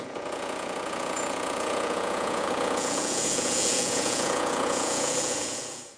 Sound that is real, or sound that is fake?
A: fake